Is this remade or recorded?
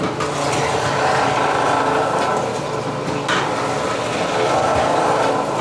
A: recorded